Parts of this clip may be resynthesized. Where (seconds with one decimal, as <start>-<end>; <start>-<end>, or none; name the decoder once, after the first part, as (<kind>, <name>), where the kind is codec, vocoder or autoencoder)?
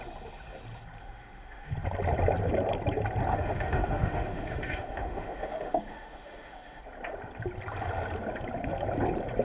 1.0-1.7 (autoencoder, DAC-VAE); 3.3-6.8